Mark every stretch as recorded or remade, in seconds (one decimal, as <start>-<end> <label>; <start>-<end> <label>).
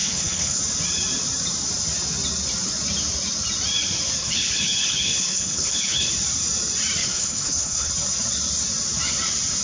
0.0-0.6 remade; 0.6-4.2 recorded; 4.2-6.1 remade; 6.1-7.0 recorded; 7.0-7.9 remade; 7.9-9.6 recorded